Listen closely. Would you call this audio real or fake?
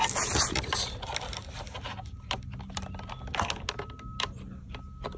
real